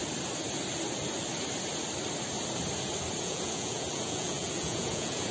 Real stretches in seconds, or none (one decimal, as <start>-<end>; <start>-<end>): 0.0-3.2